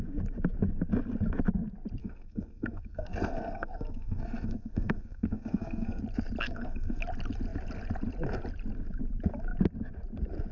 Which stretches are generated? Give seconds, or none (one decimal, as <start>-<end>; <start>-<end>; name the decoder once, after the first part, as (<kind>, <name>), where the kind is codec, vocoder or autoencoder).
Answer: 2.0-6.0 (codec, SNAC); 6.4-7.0